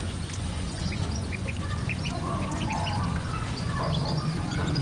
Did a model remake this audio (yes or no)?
yes